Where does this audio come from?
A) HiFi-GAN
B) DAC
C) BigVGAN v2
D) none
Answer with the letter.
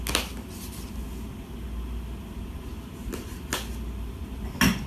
D